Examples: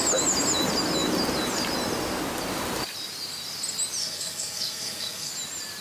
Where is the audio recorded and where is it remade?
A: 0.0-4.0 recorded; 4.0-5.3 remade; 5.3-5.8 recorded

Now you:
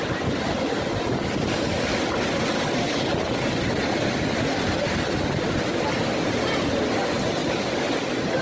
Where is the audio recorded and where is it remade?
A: 0.0-8.4 recorded

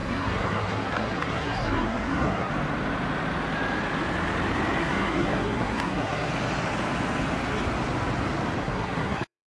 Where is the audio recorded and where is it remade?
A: 0.0-2.5 remade; 2.5-4.8 recorded; 4.8-6.3 remade; 6.3-8.6 recorded; 8.6-9.6 remade